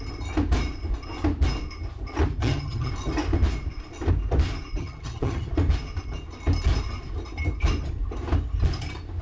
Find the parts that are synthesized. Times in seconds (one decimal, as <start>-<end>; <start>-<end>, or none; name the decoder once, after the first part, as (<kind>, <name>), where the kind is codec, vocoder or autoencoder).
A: 2.4-2.9 (vocoder, HiFi-GAN); 4.8-5.5